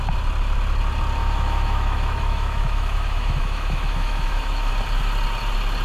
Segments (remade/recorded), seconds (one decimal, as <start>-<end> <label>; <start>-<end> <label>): 0.0-1.2 recorded; 1.2-4.7 remade; 4.7-5.8 recorded